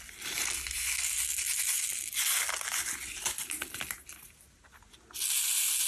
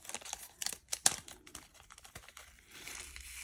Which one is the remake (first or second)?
second